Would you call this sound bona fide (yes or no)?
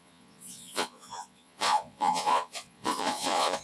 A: no